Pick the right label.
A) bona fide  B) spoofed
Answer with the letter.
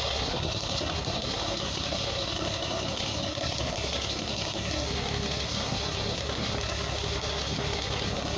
B